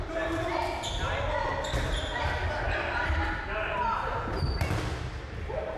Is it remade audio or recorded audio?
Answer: recorded